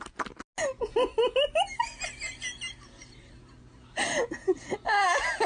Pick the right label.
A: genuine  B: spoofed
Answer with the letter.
A